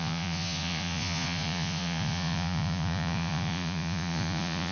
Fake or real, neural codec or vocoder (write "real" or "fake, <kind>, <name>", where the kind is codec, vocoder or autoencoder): fake, vocoder, Vocos